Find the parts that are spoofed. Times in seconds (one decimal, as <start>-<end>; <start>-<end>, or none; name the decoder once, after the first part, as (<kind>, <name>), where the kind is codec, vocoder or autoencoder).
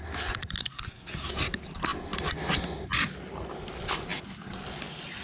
0.6-1.3 (codec, SNAC)